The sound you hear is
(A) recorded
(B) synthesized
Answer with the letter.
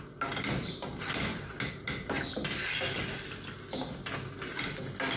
A